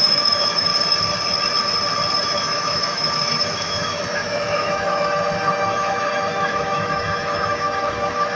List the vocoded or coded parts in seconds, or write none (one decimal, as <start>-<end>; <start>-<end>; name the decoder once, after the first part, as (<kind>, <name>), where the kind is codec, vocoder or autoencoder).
0.0-0.7 (autoencoder, DAC-VAE); 2.2-8.4